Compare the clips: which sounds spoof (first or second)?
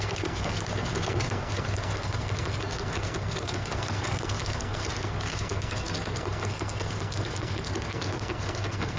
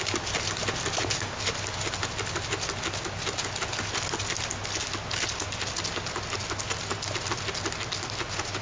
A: first